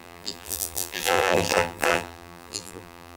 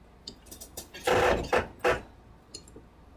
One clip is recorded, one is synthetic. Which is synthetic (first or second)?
first